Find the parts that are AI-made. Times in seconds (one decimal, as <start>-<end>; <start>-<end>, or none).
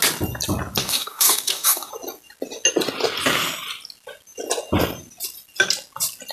0.8-1.9